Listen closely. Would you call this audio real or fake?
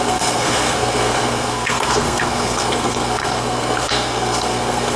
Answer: fake